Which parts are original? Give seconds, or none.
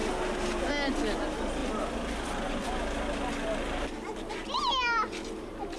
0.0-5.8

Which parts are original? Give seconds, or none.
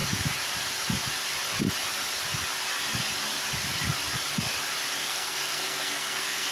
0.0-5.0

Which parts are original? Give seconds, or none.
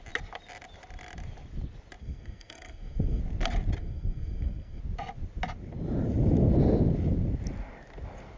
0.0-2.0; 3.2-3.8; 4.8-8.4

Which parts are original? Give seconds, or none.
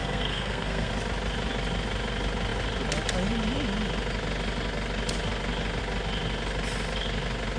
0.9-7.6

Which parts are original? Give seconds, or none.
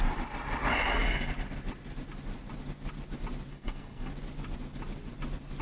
0.0-3.5; 4.1-5.6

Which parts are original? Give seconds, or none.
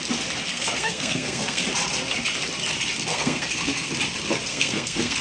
0.0-0.5; 1.6-3.1; 3.9-4.5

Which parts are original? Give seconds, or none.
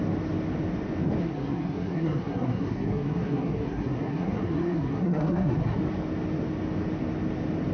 0.0-1.2; 5.8-7.7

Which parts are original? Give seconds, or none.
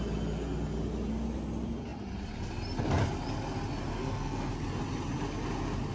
0.0-3.9; 4.5-5.9